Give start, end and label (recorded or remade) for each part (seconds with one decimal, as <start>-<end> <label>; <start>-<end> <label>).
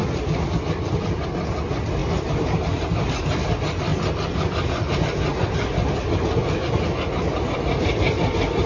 0.0-8.7 recorded